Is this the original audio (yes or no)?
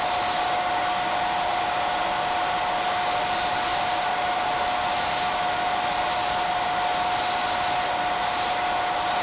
yes